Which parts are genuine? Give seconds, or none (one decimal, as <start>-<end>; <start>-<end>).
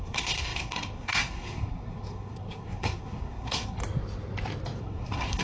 3.8-4.8